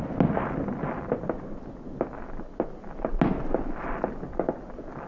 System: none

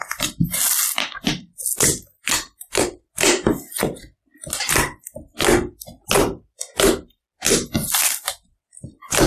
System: none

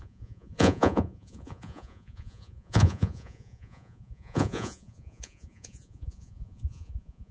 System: vocoder, Vocos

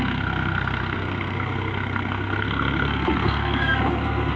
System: codec, SNAC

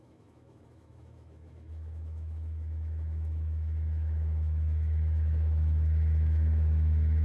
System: autoencoder, DAC-VAE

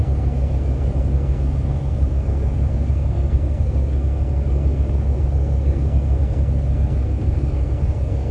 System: codec, SNAC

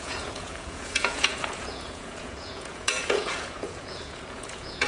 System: vocoder, Vocos